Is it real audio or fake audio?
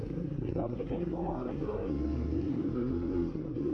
fake